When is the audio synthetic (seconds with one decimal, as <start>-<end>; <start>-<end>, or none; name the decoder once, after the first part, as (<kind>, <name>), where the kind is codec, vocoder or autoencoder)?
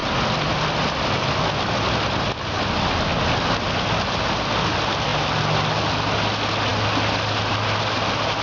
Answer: none